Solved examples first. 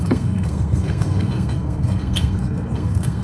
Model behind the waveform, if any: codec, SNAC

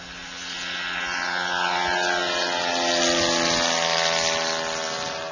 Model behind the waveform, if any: none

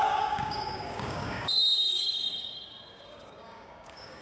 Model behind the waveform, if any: codec, DAC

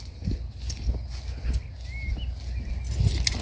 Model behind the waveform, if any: none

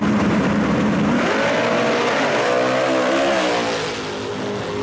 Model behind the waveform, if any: none